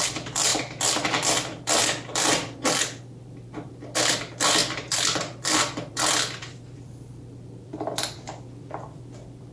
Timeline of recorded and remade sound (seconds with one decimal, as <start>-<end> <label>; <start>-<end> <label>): 0.0-9.5 remade